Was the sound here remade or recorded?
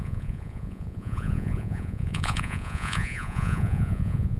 remade